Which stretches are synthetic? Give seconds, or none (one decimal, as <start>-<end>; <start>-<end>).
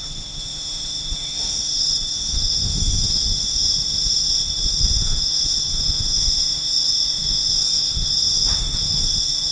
0.0-9.5